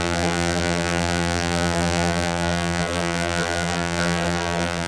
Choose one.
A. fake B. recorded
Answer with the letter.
A